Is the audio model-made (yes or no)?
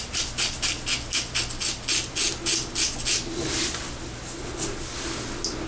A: no